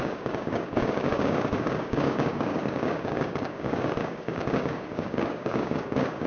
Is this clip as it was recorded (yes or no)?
no